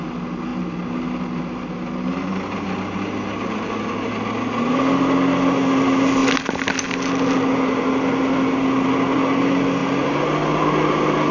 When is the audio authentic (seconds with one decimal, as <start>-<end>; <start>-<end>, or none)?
0.0-11.3